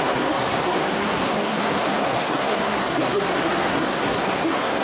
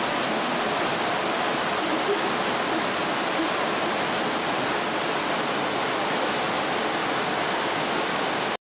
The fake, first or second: first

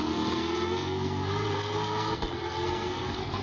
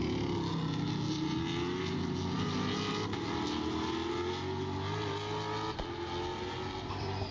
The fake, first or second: first